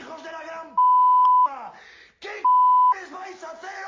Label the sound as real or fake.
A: real